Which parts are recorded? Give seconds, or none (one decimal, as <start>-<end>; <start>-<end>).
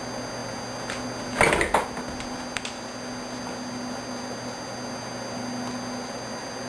0.0-6.7